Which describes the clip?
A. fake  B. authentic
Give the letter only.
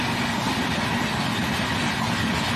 B